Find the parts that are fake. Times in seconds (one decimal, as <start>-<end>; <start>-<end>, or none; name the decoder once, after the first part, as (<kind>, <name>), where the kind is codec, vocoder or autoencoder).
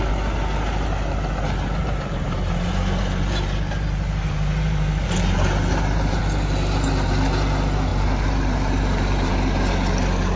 1.8-6.2 (vocoder, BigVGAN v2); 7.9-9.3